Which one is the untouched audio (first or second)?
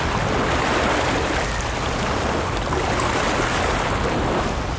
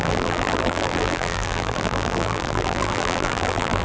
first